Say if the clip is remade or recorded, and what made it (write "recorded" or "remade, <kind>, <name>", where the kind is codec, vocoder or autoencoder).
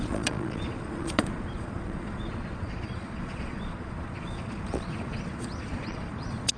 remade, vocoder, Vocos